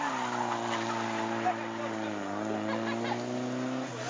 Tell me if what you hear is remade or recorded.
recorded